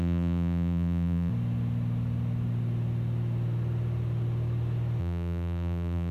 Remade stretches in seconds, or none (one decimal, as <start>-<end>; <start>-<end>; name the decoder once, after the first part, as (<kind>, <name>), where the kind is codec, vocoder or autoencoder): 0.0-1.3 (vocoder, BigVGAN v2); 5.0-6.1